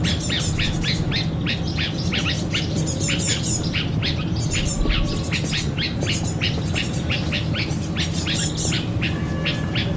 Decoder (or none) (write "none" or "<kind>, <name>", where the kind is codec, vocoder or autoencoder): none